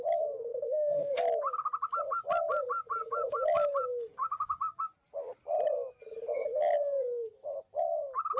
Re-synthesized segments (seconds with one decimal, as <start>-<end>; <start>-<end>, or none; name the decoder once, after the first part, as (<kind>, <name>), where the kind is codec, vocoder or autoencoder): 0.5-1.1 (codec, DAC); 3.0-3.7; 4.2-4.8